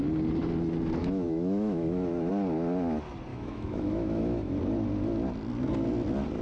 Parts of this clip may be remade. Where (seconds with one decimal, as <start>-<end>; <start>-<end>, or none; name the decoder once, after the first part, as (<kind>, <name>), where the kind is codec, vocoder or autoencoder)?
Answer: 1.0-2.3 (autoencoder, DAC-VAE); 3.3-4.6